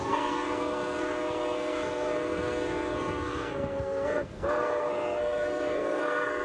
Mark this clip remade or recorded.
remade